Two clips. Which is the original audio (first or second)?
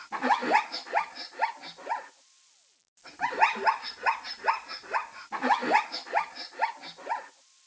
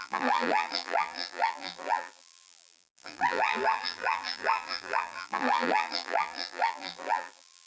first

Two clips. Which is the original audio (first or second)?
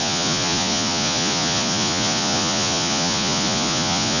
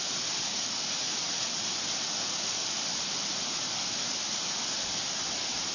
second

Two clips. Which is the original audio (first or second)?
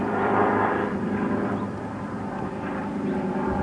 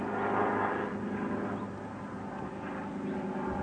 second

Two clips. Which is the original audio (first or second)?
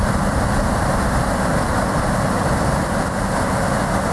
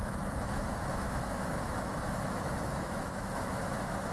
first